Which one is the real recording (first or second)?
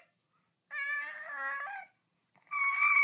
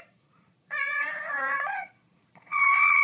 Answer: first